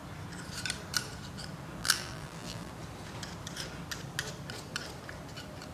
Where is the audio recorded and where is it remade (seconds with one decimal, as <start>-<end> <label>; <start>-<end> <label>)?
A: 0.0-1.8 recorded; 1.8-2.7 remade; 2.7-5.7 recorded